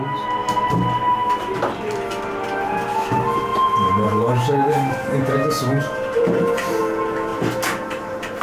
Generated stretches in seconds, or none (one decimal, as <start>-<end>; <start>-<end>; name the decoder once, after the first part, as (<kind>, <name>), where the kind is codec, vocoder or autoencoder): 0.4-1.5 (vocoder, BigVGAN v2); 3.5-6.8; 7.3-8.4